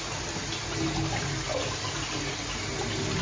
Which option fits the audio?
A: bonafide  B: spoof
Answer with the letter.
A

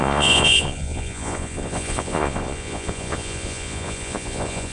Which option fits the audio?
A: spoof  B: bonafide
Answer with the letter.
A